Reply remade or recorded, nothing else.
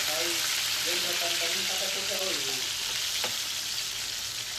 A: recorded